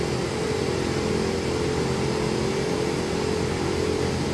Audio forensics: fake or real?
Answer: real